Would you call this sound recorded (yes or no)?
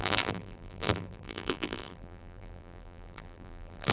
no